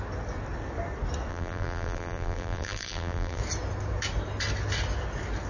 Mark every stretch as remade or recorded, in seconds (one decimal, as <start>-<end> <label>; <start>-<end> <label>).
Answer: 0.0-1.3 recorded; 1.3-3.4 remade; 3.4-5.5 recorded